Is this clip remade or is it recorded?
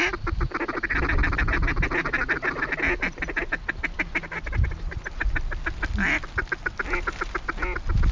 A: recorded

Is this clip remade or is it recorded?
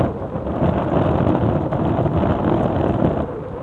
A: recorded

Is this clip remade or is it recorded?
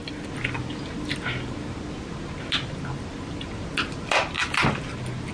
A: recorded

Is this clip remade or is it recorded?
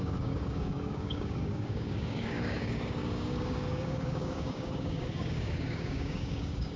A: remade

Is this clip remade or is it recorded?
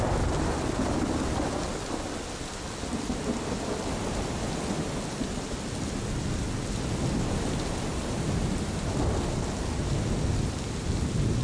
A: recorded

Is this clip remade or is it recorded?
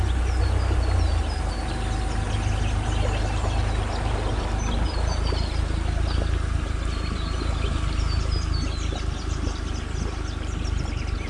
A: recorded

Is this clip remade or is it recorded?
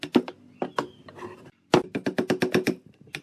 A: recorded